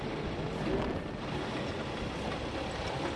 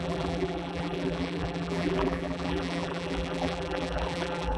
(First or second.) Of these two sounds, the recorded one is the first